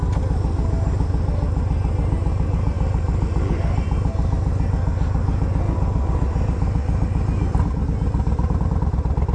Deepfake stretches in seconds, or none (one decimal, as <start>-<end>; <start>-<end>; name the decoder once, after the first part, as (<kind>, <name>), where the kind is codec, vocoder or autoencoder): none